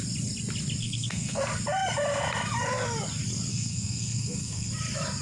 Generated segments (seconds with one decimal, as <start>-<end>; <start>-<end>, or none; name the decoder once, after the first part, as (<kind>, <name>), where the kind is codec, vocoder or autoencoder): 0.8-1.4 (codec, SNAC); 3.5-4.7